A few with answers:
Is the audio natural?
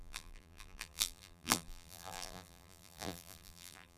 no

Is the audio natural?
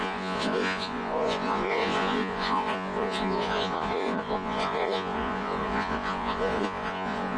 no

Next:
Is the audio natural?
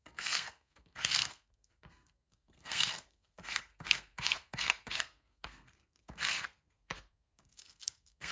no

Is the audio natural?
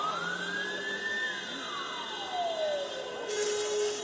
yes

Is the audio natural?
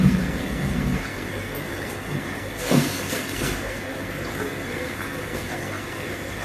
no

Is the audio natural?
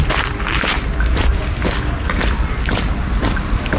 no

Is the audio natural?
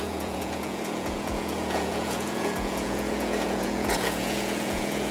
no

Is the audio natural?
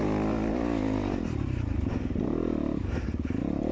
yes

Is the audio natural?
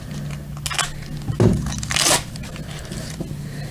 yes